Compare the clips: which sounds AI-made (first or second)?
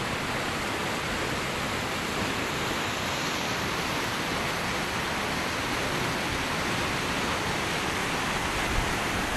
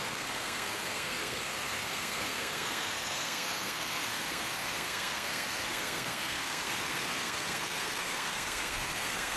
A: second